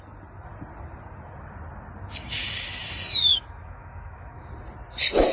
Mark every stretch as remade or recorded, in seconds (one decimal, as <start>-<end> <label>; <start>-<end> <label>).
0.0-3.3 recorded; 3.3-4.5 remade; 4.5-5.3 recorded